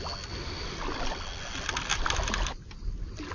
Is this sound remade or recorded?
recorded